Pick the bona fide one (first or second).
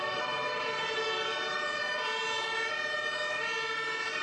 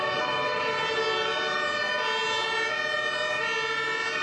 second